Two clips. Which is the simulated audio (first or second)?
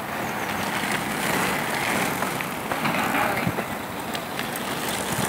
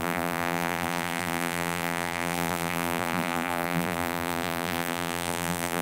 second